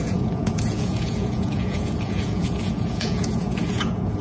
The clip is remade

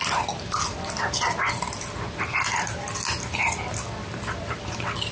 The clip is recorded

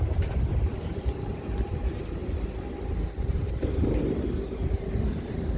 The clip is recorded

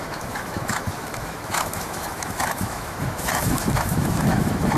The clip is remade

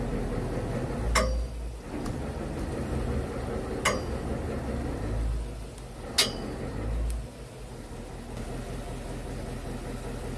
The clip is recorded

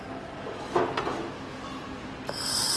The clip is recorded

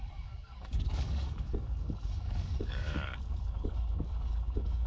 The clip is remade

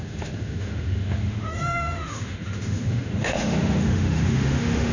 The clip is remade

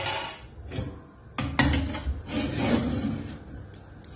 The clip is recorded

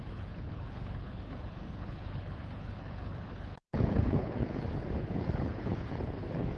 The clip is remade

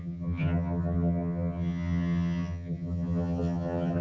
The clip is remade